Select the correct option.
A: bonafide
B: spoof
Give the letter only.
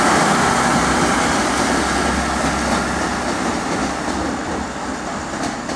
A